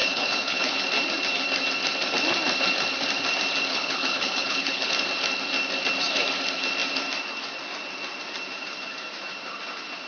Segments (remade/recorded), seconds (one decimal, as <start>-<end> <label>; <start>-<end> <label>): 0.0-0.8 remade; 0.8-3.7 recorded; 3.7-4.9 remade; 4.9-10.1 recorded